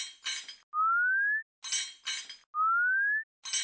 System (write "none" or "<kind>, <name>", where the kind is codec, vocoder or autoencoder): none